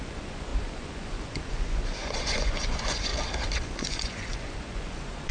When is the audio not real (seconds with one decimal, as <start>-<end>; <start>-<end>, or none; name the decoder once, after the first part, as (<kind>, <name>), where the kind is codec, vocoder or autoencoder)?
0.0-3.1 (vocoder, Vocos); 3.6-5.3